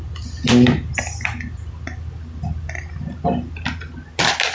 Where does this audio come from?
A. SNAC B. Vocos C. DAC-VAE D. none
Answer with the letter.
D